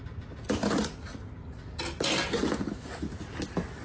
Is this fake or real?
real